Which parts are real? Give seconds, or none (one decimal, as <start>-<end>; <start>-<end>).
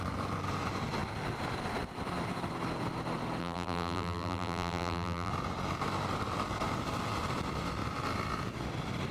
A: 0.0-3.4; 5.3-9.1